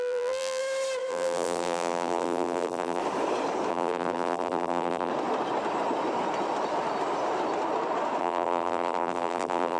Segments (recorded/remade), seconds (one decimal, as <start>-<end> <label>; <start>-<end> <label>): 0.0-0.6 remade; 0.6-1.1 recorded; 1.1-3.0 remade; 3.0-3.7 recorded; 3.7-5.1 remade; 5.1-8.2 recorded; 8.2-9.8 remade